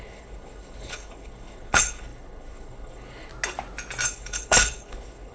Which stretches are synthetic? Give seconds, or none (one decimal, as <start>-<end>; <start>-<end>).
0.0-3.3; 4.1-5.3